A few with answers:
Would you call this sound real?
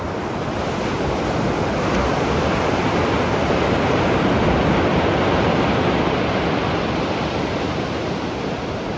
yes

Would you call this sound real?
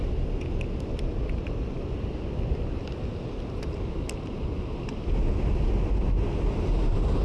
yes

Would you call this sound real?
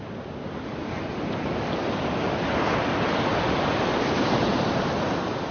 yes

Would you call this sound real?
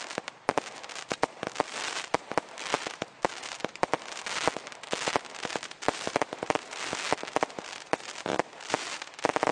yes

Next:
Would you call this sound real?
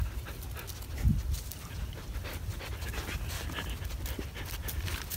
yes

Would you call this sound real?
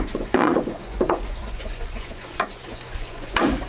no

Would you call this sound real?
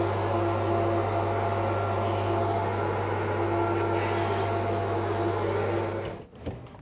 yes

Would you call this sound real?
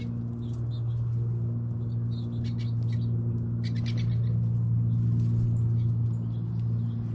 yes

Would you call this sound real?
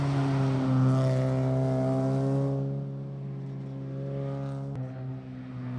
yes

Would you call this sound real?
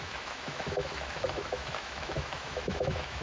no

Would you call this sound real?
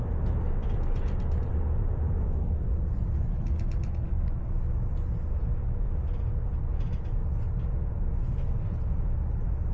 yes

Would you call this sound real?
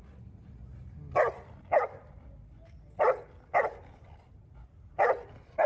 yes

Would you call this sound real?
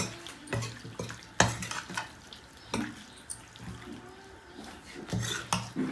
yes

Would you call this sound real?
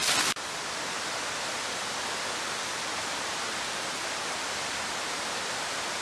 yes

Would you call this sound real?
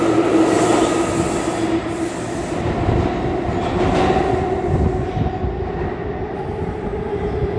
yes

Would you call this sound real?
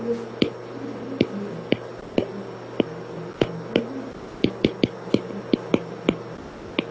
yes